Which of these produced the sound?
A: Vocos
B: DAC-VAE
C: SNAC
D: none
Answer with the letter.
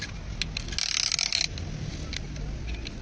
D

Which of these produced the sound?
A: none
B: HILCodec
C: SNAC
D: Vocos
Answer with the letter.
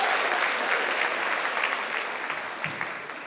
A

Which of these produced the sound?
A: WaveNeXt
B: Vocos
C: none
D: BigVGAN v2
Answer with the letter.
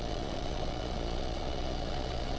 B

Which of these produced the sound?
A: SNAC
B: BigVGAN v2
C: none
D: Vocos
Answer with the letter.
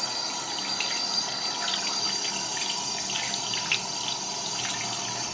C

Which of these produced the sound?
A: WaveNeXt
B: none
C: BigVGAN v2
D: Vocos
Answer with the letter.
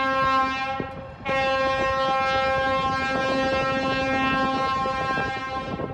B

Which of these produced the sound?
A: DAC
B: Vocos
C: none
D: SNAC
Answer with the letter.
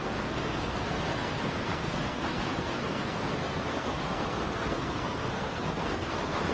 D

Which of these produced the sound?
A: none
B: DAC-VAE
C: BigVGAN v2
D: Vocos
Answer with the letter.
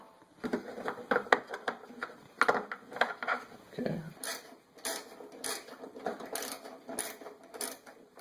A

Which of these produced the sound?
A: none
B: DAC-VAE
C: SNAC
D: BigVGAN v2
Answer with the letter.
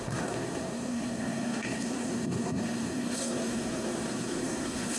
C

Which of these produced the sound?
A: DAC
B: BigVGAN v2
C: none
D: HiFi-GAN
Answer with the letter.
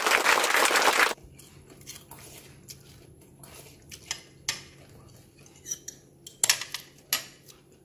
C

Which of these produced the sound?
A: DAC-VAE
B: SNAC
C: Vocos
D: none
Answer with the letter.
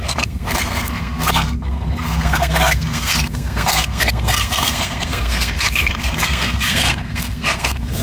B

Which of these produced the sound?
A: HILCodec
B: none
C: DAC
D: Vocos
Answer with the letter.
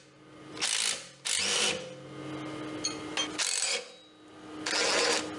B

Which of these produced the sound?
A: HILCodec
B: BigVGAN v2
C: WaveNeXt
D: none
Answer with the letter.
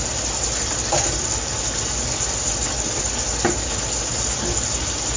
D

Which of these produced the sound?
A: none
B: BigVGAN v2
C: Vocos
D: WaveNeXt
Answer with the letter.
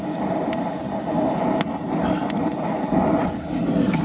A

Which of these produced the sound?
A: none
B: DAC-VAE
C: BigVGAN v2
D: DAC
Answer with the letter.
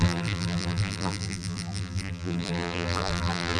C